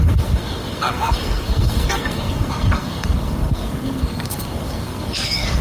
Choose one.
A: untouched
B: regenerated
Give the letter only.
B